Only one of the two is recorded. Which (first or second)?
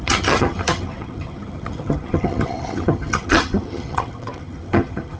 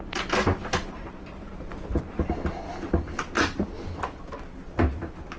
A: second